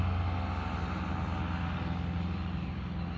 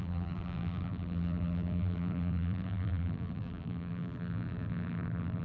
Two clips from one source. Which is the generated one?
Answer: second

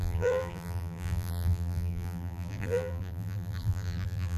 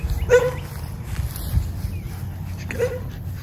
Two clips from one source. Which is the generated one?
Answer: first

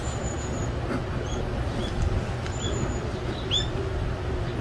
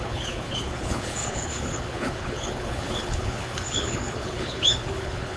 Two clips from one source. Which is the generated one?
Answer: second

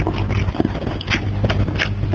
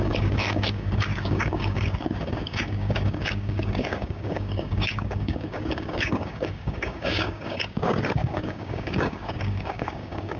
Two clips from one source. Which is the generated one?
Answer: second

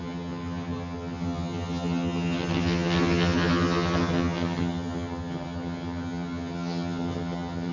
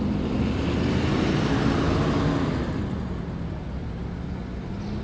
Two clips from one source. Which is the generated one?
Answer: first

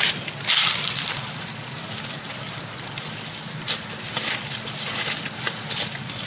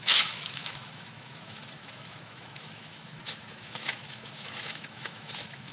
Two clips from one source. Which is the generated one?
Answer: second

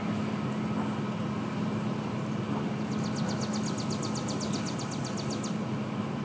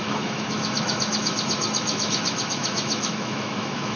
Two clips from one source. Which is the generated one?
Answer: second